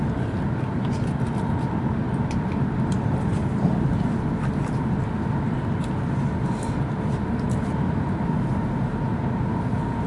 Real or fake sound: real